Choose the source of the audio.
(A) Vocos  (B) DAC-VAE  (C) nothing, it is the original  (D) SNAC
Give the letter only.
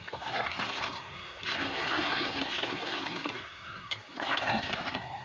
D